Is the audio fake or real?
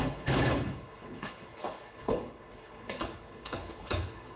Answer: fake